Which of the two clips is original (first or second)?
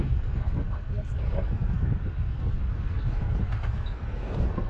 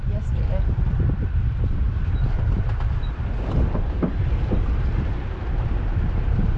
second